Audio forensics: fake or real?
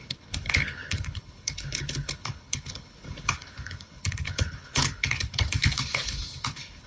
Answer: fake